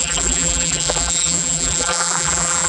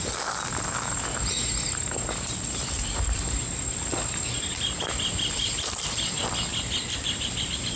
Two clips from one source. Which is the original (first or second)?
second